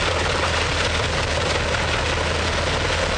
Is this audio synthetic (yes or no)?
no